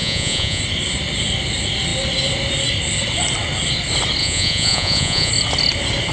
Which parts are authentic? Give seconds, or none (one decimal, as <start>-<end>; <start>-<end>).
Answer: 0.6-4.2; 5.3-6.1